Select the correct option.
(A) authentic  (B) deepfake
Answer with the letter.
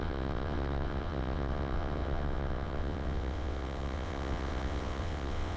B